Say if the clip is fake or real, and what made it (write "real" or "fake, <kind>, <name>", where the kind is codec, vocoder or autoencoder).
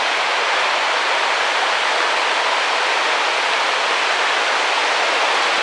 real